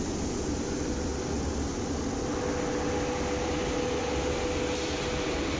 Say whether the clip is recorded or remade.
recorded